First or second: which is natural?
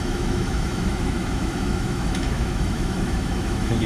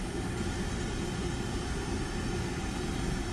second